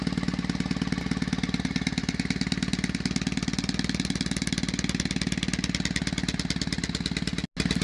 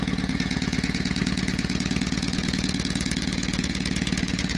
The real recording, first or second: first